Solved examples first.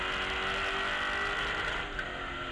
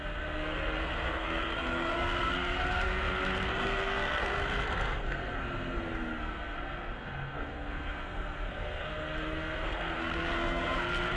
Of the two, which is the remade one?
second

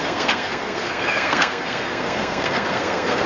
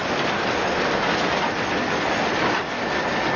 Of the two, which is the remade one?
first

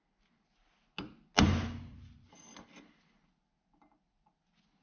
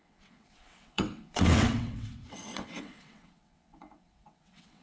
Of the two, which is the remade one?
second